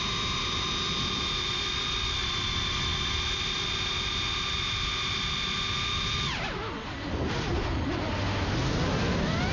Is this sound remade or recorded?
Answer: recorded